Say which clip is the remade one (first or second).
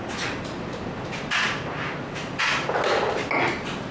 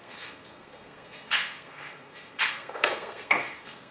second